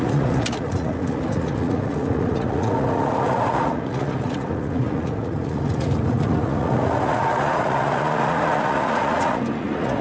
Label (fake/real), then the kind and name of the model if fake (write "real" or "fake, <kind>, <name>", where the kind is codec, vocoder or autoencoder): fake, vocoder, Vocos